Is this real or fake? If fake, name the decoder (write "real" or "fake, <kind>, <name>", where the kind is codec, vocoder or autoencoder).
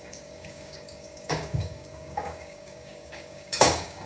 fake, codec, DAC